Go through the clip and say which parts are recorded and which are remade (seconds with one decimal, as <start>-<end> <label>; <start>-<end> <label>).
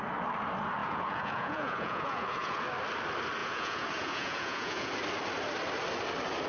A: 0.0-0.8 recorded; 0.8-2.6 remade; 2.6-3.4 recorded; 3.4-4.9 remade; 4.9-6.5 recorded